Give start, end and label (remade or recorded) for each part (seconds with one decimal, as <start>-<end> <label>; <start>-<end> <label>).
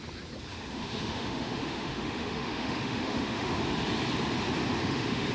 0.0-0.5 recorded; 0.5-3.6 remade; 3.6-4.8 recorded; 4.8-5.3 remade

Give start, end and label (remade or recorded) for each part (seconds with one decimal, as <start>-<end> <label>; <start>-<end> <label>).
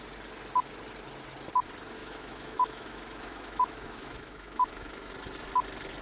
0.0-2.0 recorded; 2.0-5.1 remade; 5.1-6.0 recorded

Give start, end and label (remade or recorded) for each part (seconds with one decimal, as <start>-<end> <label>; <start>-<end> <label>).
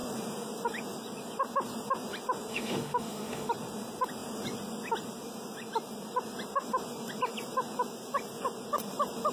0.0-2.5 recorded; 2.5-3.5 remade; 3.5-9.3 recorded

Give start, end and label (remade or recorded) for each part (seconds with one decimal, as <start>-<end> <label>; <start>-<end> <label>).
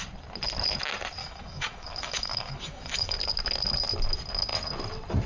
0.0-1.2 recorded; 1.2-3.2 remade; 3.2-5.3 recorded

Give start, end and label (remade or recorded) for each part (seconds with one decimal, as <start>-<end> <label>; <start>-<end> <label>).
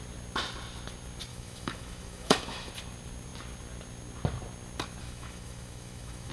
0.0-1.3 recorded; 1.3-2.7 remade; 2.7-5.0 recorded; 5.0-6.3 remade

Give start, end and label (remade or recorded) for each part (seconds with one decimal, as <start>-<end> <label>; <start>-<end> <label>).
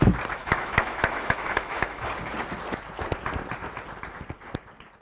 0.0-0.4 recorded; 0.4-2.1 remade; 2.1-5.0 recorded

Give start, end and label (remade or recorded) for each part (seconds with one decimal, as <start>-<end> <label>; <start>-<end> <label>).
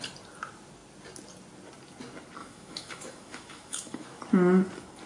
0.0-2.4 recorded; 2.4-4.2 remade; 4.2-5.1 recorded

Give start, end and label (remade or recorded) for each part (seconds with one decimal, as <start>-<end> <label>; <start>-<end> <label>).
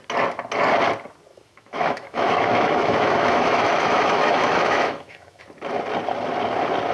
0.0-1.3 recorded; 1.3-5.4 remade; 5.4-6.9 recorded